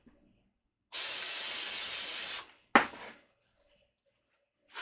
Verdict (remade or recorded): recorded